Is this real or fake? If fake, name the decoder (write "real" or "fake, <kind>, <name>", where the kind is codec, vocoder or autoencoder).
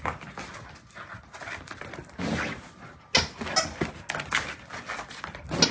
real